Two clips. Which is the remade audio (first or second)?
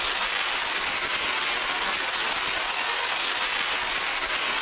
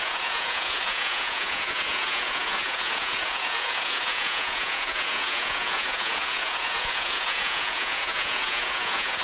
second